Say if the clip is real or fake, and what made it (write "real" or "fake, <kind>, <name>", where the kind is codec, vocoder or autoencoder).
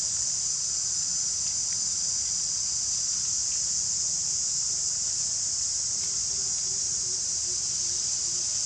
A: real